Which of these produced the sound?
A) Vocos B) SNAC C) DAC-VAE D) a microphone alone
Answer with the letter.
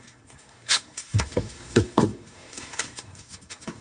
B